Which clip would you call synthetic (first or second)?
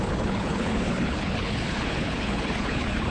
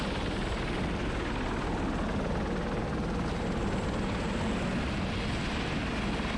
first